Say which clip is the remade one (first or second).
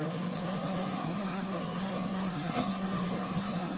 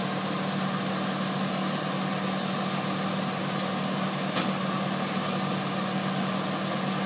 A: first